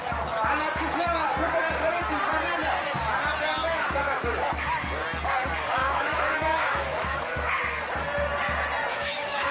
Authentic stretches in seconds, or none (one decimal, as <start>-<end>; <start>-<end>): 0.0-3.6; 4.5-5.8; 7.6-8.9